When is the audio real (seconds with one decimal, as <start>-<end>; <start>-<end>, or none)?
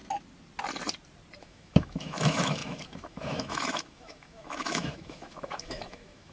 0.0-1.4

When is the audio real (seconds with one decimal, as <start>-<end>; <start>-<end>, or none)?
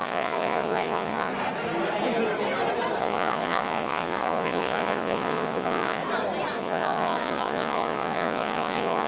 1.3-3.0; 6.0-6.6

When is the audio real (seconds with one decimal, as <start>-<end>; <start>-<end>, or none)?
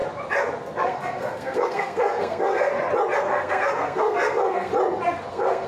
0.0-0.8; 2.7-3.2; 4.7-5.3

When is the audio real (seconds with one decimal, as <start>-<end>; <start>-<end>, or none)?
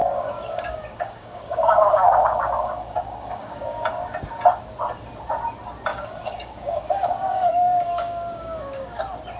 3.8-5.9; 9.0-9.4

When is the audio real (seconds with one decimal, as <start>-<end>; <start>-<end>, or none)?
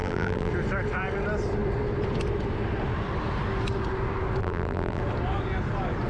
0.5-4.4; 5.0-6.1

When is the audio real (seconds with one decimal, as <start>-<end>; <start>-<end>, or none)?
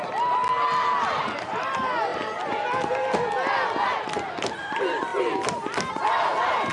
0.0-6.7